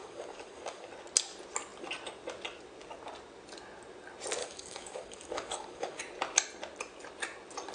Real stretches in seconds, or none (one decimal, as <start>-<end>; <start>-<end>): 0.9-4.4; 6.0-7.7